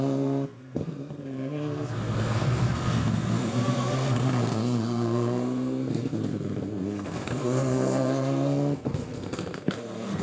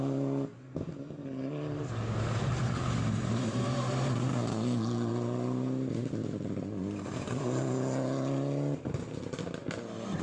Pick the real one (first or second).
second